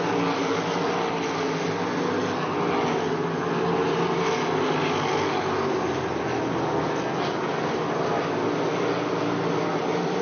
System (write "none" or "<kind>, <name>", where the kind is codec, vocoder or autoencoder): none